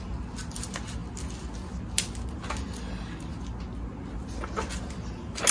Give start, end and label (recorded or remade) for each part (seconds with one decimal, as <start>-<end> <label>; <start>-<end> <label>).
0.0-5.5 recorded